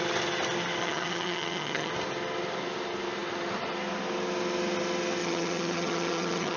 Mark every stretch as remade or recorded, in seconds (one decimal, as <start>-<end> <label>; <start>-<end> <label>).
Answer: 0.0-0.8 recorded; 0.8-1.9 remade; 1.9-5.2 recorded; 5.2-6.6 remade

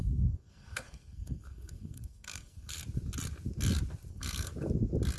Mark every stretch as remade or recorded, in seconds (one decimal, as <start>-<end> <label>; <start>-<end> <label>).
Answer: 0.0-2.8 remade; 2.8-4.1 recorded; 4.1-4.5 remade; 4.5-5.2 recorded

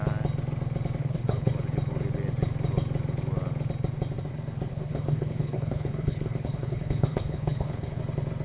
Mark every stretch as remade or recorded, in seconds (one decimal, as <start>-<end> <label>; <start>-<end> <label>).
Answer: 0.0-1.0 recorded; 1.0-1.5 remade; 1.5-4.7 recorded; 4.7-8.0 remade; 8.0-8.4 recorded

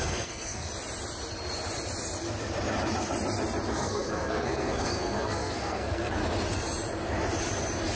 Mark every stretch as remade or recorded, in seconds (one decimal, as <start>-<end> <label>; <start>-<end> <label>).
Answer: 0.0-0.7 remade; 0.7-3.7 recorded; 3.7-6.2 remade; 6.2-8.0 recorded

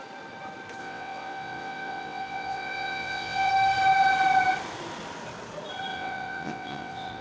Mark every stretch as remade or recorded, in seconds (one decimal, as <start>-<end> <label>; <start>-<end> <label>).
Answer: 0.0-0.8 recorded; 0.8-3.5 remade; 3.5-5.9 recorded; 5.9-7.2 remade

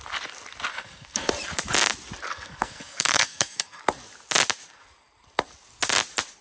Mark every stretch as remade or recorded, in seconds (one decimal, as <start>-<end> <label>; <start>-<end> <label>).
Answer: 0.0-0.7 recorded; 0.7-1.3 remade; 1.3-2.3 recorded; 2.3-3.8 remade; 3.8-6.4 recorded

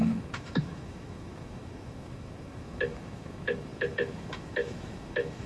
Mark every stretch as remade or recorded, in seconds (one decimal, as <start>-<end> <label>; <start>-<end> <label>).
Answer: 0.0-5.5 remade

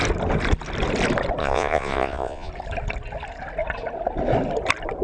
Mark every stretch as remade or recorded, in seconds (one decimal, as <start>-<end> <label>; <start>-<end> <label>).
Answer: 0.0-1.4 recorded; 1.4-2.5 remade; 2.5-5.0 recorded